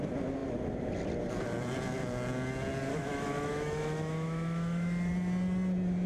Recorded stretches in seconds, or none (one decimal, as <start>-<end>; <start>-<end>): 0.0-2.9; 5.1-6.1